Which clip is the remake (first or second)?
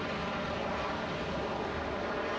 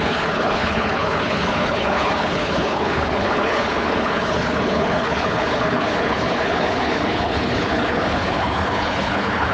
second